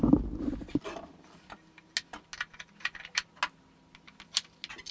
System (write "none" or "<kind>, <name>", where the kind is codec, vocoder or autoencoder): none